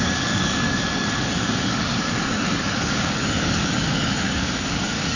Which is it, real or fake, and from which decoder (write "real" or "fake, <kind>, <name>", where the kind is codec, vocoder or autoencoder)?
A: fake, codec, DAC